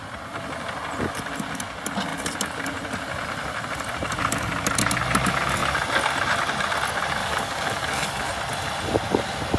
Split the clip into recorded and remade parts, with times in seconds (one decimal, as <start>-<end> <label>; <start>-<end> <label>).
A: 0.0-7.2 recorded; 7.2-8.3 remade; 8.3-9.6 recorded